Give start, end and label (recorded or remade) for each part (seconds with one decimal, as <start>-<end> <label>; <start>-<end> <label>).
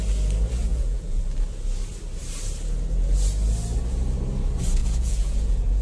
0.0-0.7 recorded; 0.7-1.2 remade; 1.2-4.8 recorded; 4.8-5.8 remade